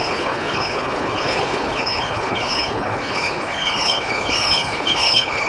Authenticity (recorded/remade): remade